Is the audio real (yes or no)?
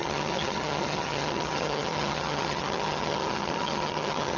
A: no